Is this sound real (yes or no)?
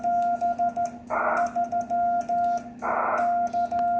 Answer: yes